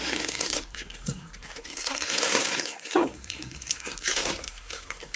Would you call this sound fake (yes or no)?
yes